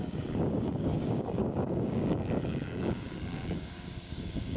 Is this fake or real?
fake